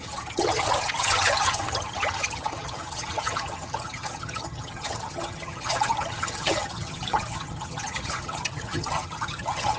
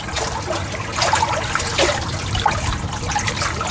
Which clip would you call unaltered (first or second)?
second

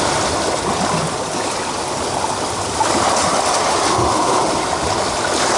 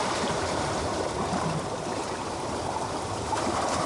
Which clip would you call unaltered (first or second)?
first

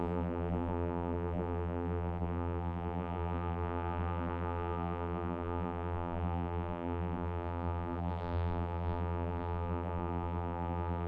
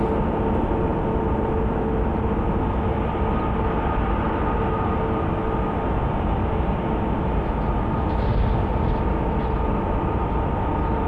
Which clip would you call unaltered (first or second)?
second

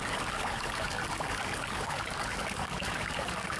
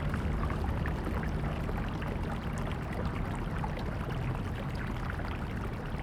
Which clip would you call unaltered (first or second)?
second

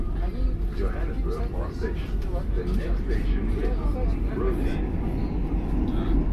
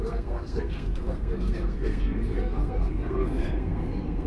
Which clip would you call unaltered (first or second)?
first